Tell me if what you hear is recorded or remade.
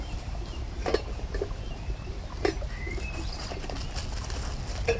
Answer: recorded